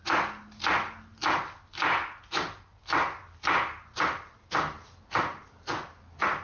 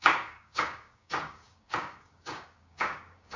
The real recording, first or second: first